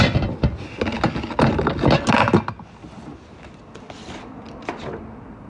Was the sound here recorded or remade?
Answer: recorded